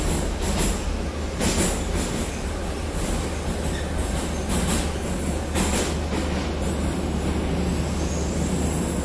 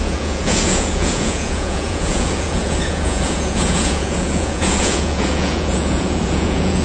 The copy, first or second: second